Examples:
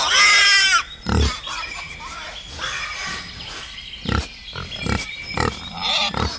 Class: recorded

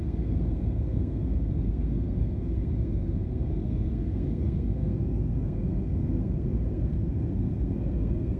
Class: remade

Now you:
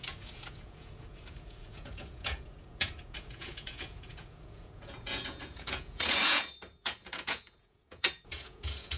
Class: remade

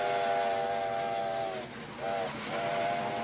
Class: recorded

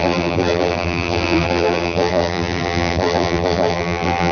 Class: remade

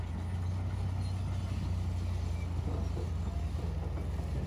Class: recorded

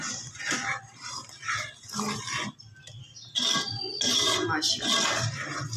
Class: recorded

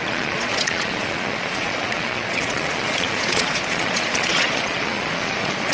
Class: remade